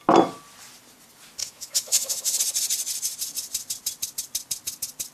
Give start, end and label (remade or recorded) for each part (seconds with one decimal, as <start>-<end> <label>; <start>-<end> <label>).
0.0-1.4 recorded; 1.4-2.4 remade; 2.4-5.1 recorded